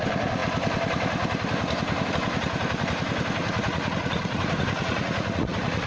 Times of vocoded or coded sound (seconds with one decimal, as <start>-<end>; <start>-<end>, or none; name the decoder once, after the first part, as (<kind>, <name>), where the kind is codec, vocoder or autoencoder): 3.4-5.9 (vocoder, Vocos)